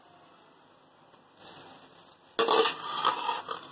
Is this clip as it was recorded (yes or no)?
yes